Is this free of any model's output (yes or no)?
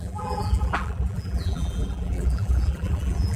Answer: no